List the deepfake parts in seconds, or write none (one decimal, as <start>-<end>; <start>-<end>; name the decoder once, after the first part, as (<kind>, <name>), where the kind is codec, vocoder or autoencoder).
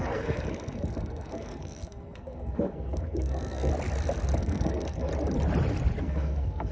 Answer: 0.0-3.7 (codec, SNAC); 4.4-5.1; 6.0-6.7